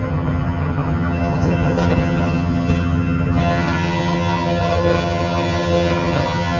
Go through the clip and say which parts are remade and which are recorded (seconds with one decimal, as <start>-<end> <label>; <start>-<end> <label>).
0.0-6.6 remade